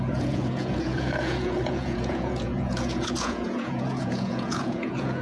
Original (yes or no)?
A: no